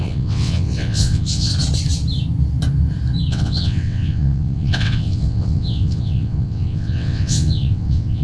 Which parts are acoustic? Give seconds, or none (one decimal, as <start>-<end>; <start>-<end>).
1.5-3.3